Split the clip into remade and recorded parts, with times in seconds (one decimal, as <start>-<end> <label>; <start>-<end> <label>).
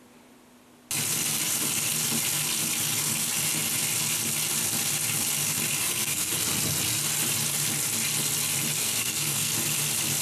0.0-5.8 recorded; 5.8-6.3 remade; 6.3-8.8 recorded; 8.8-9.5 remade; 9.5-10.2 recorded